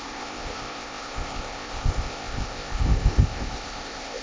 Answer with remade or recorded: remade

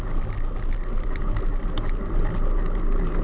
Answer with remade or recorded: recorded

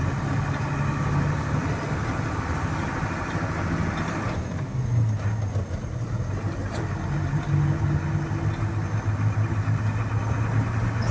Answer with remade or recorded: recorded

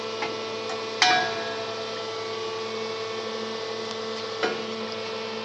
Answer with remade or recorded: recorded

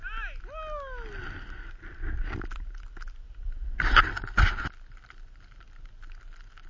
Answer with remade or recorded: recorded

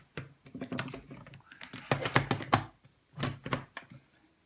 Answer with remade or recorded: recorded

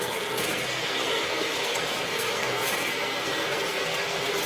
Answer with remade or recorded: remade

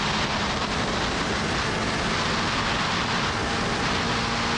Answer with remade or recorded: recorded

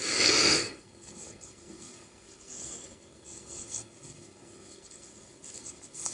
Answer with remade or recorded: remade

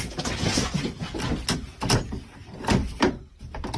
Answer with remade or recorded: recorded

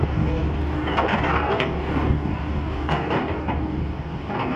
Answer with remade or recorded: remade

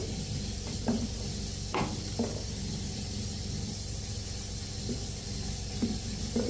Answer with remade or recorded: remade